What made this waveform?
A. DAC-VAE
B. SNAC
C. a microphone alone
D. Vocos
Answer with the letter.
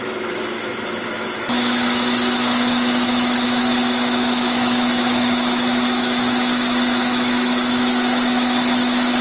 A